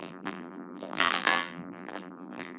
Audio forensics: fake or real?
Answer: fake